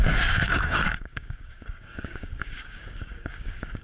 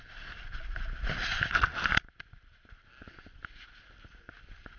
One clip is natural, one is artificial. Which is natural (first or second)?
second